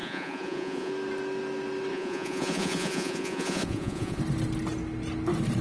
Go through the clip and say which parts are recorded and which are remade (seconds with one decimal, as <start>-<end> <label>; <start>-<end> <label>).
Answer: 0.0-0.9 remade; 0.9-1.9 recorded; 1.9-4.2 remade; 4.2-5.6 recorded